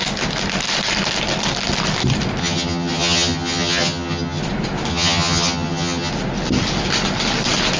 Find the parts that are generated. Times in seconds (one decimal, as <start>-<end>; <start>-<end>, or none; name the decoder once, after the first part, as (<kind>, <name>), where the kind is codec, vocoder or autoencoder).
2.4-4.4 (vocoder, HiFi-GAN); 4.9-6.1